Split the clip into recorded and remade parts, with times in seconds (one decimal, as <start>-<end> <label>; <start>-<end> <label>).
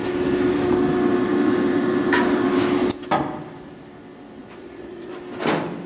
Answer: 0.0-4.4 recorded; 4.4-5.2 remade; 5.2-5.9 recorded